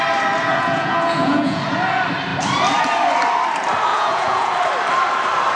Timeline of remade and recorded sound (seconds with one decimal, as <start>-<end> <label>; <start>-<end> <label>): 0.0-0.5 recorded; 0.5-1.6 remade; 1.6-3.9 recorded; 3.9-4.5 remade; 4.5-5.6 recorded